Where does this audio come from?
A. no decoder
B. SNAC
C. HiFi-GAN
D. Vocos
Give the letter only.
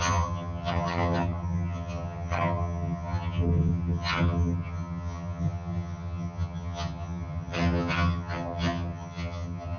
C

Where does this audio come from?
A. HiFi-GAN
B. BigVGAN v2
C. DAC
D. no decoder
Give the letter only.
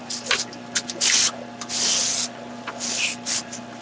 D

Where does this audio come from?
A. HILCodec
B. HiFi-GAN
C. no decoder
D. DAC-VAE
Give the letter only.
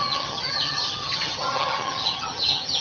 B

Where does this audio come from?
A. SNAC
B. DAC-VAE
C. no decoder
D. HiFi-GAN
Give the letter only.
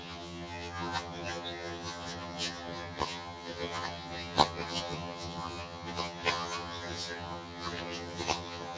D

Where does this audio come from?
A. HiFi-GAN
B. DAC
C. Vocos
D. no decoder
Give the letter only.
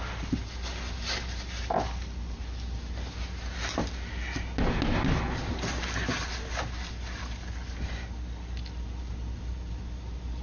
D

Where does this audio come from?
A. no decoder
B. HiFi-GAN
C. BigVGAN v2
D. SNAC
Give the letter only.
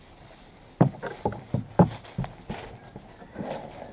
A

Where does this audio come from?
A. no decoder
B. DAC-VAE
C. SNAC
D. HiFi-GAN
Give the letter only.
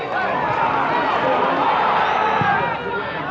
A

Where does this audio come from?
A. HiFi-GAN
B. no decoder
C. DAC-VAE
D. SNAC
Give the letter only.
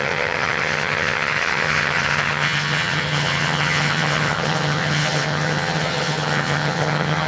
A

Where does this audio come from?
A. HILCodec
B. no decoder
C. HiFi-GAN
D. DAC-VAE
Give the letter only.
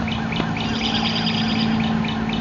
B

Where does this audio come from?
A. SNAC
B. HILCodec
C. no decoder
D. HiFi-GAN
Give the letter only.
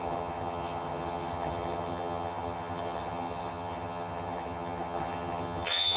D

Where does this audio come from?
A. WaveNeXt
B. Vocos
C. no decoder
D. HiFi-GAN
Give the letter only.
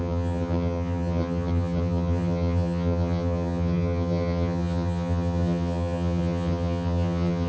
D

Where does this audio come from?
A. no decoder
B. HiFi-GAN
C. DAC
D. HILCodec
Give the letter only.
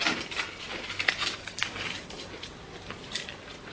A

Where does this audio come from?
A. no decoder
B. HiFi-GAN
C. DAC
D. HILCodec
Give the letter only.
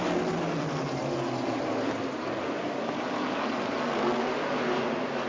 A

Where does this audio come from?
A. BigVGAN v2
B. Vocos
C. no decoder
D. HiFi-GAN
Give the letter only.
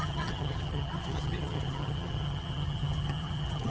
D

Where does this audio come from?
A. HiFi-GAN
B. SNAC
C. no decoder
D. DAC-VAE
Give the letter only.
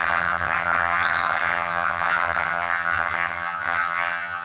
A